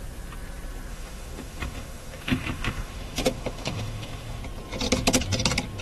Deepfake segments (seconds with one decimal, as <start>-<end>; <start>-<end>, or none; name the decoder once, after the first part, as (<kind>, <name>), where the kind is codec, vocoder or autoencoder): 0.9-4.4 (autoencoder, DAC-VAE)